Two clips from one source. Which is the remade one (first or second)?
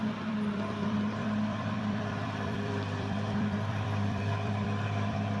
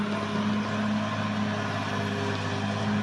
first